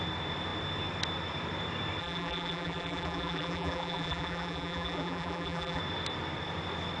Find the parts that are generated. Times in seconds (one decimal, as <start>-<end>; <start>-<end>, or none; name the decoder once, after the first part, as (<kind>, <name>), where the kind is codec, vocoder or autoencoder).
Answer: 2.0-5.8 (vocoder, BigVGAN v2)